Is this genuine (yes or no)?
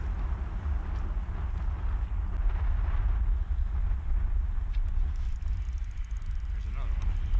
yes